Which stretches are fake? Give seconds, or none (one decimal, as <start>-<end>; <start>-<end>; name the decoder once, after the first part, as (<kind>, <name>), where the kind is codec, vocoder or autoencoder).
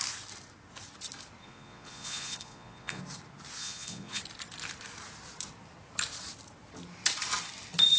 1.4-3.0 (vocoder, Vocos); 3.6-4.2